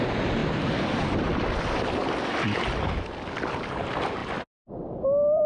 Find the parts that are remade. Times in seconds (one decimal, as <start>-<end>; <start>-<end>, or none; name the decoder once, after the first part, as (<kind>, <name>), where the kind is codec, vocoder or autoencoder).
none